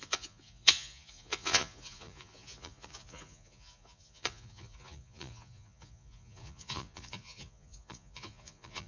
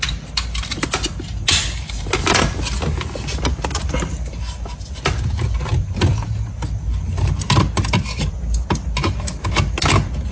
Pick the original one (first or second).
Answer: second